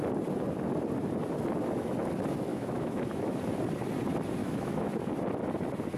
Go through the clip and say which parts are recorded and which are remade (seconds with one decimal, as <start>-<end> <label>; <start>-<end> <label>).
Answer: 0.0-2.5 recorded; 2.5-3.4 remade; 3.4-4.4 recorded; 4.4-5.1 remade; 5.1-6.0 recorded